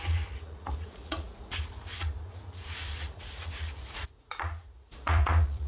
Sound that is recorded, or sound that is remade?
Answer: remade